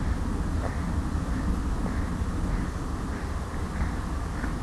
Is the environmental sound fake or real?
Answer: real